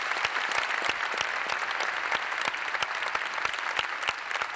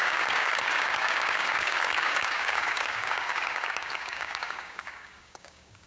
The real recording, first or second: first